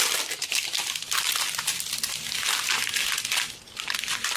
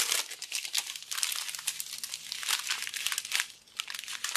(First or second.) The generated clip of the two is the first